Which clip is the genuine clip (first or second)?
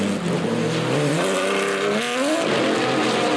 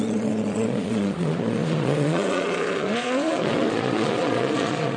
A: first